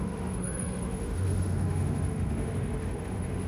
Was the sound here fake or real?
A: fake